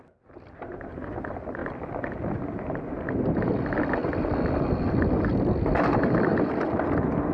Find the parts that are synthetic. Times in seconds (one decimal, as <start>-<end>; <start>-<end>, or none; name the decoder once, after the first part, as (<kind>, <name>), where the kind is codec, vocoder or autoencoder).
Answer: none